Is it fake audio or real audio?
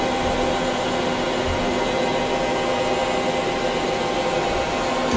real